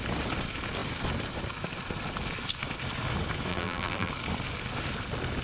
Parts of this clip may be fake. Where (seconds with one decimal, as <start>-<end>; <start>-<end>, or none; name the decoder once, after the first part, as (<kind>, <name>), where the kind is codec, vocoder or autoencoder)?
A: 3.5-4.1 (vocoder, BigVGAN v2)